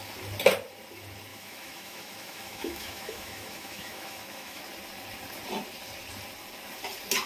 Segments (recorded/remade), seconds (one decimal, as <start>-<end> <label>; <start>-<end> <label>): 0.0-1.3 recorded; 1.3-4.6 remade; 4.6-7.3 recorded